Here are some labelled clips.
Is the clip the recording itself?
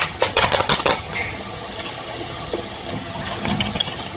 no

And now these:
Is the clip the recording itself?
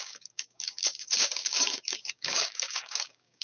no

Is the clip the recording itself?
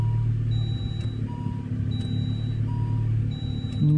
yes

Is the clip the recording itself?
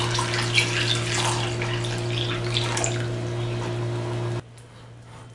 yes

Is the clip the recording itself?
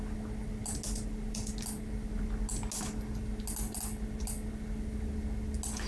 yes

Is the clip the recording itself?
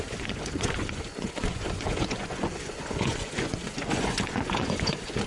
no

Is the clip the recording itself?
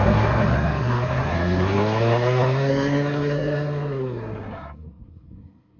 no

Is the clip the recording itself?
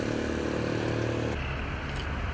yes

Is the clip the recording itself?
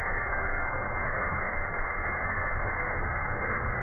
no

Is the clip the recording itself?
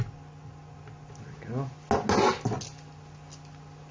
yes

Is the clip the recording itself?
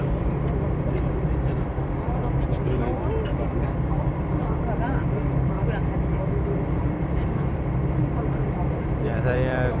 no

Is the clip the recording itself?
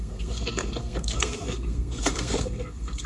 no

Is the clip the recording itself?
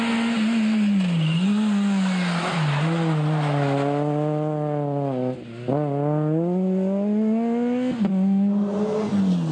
yes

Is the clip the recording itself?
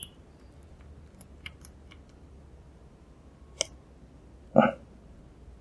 yes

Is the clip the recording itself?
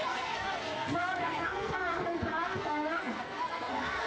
no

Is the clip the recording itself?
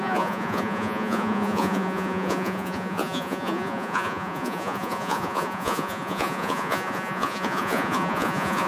no